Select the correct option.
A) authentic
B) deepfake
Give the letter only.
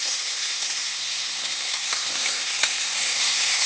B